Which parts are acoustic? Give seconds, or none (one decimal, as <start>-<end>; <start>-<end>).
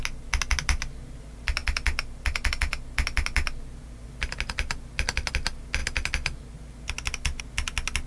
0.0-8.1